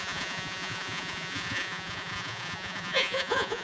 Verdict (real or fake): fake